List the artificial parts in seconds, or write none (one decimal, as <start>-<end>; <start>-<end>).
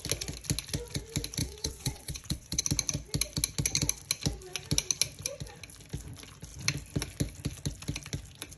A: 1.4-2.6